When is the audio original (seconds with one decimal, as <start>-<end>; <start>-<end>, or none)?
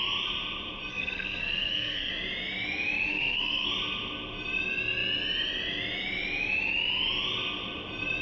0.0-0.9; 2.1-3.1; 3.7-8.2